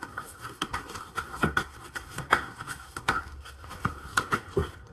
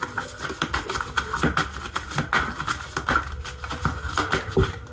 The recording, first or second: second